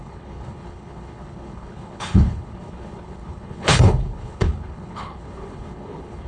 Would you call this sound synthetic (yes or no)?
yes